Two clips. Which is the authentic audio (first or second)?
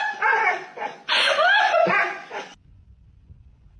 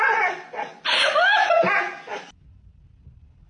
second